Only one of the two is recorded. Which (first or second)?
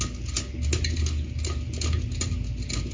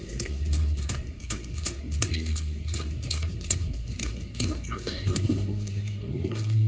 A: first